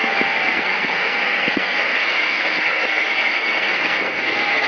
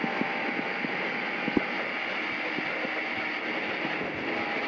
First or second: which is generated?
first